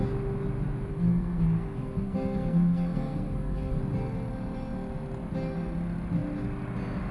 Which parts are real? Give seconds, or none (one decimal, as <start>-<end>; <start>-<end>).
0.0-0.9; 3.8-7.1